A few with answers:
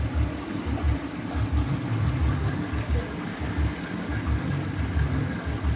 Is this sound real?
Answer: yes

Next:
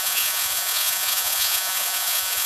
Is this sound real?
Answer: no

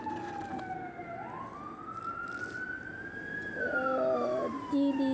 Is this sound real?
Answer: yes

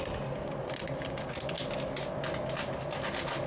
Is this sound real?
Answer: yes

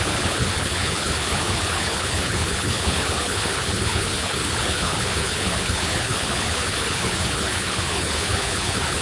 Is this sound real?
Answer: no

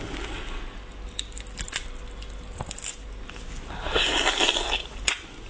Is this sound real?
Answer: yes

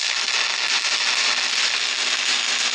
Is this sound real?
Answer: yes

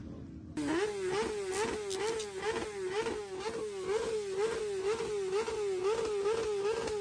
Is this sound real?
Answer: yes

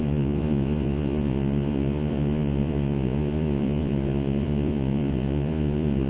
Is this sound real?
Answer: no